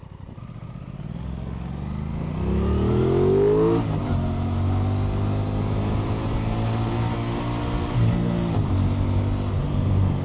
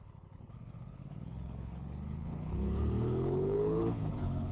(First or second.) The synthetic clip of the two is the second